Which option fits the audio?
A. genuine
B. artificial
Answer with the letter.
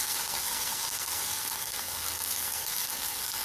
B